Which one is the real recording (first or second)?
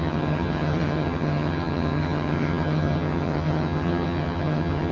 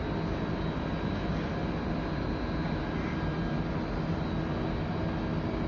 second